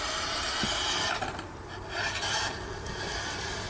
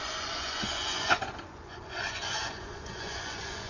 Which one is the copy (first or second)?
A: second